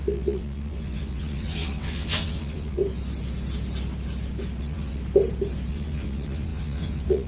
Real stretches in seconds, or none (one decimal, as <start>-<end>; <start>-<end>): 2.8-4.6; 5.0-5.7